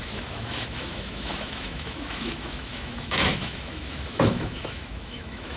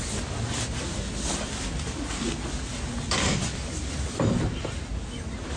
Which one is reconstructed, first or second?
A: first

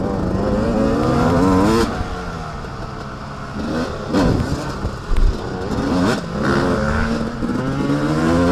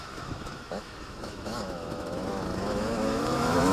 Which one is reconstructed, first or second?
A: second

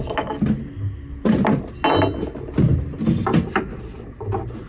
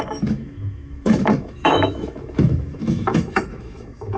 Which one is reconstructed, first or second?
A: second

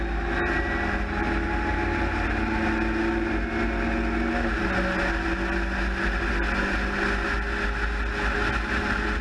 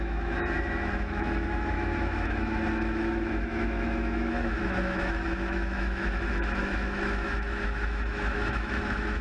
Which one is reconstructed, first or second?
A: second